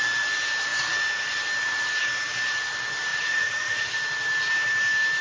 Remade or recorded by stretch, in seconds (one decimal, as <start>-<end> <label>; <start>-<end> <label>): 0.0-3.1 recorded; 3.1-3.9 remade; 3.9-5.2 recorded